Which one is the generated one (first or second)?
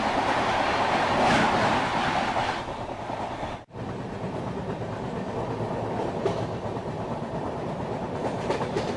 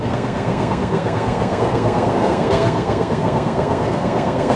second